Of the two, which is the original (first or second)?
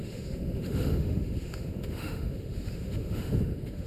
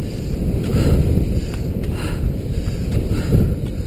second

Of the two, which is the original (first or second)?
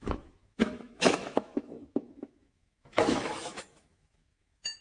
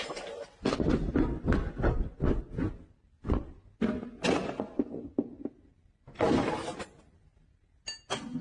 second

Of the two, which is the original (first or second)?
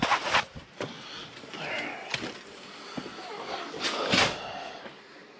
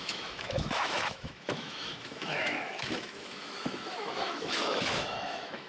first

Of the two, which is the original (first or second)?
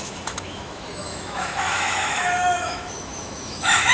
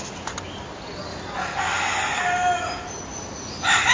second